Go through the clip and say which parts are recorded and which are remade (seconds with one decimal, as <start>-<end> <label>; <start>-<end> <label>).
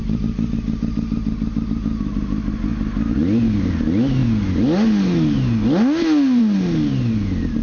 0.0-7.6 recorded